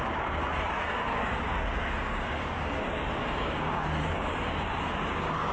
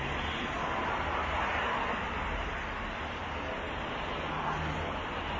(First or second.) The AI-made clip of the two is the first